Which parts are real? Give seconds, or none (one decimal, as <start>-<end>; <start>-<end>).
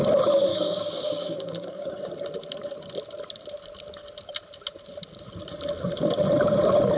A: 0.0-0.5; 1.9-7.0